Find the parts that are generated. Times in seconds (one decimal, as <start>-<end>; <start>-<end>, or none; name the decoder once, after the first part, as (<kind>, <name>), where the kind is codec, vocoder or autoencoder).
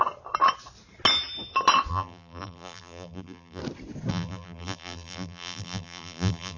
1.9-3.6 (vocoder, BigVGAN v2); 4.1-6.6